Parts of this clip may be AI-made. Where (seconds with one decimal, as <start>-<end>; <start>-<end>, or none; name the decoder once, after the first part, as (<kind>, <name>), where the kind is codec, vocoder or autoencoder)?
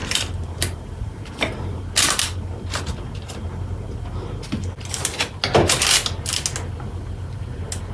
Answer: 0.0-1.8 (vocoder, BigVGAN v2)